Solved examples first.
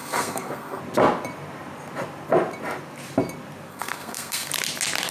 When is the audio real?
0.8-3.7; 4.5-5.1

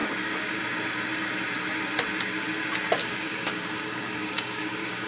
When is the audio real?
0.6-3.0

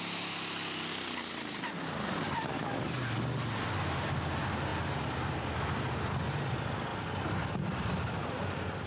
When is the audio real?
0.0-8.9

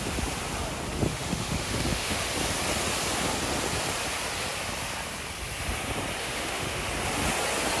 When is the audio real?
0.0-1.1; 2.2-6.2; 6.9-7.8

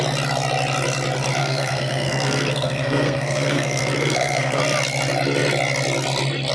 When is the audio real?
0.0-1.4; 4.6-6.5

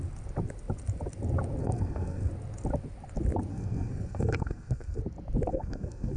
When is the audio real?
0.0-1.6; 2.3-3.5; 5.0-5.5